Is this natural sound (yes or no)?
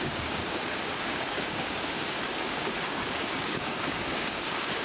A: no